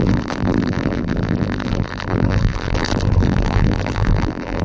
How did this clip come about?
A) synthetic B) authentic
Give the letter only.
A